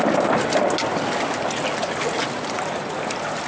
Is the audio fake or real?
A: real